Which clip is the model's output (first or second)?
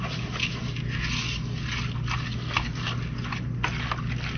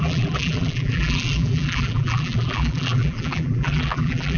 second